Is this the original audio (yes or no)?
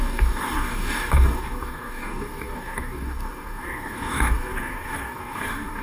no